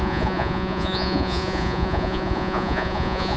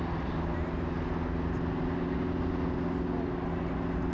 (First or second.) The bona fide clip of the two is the second